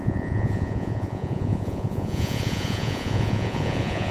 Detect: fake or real fake